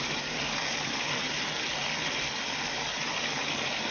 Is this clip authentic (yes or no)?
yes